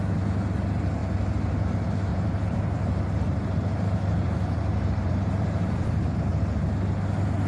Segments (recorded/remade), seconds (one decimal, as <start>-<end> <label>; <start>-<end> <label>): 0.0-2.1 recorded; 2.1-6.4 remade; 6.4-7.5 recorded

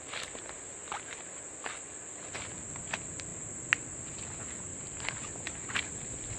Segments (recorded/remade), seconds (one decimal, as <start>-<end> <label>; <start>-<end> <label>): 0.0-0.7 recorded; 0.7-1.4 remade; 1.4-3.3 recorded; 3.3-3.9 remade; 3.9-4.7 recorded; 4.7-5.6 remade; 5.6-6.4 recorded

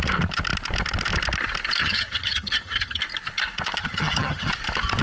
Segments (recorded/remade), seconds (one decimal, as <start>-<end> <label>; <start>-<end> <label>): 0.0-1.8 recorded; 1.8-3.0 remade; 3.0-3.8 recorded; 3.8-4.5 remade; 4.5-5.0 recorded